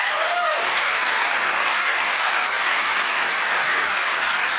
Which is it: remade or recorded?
remade